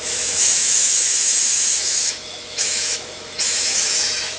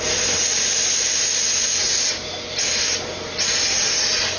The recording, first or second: second